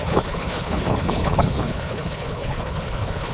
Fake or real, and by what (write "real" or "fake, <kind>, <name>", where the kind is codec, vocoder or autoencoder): fake, codec, HILCodec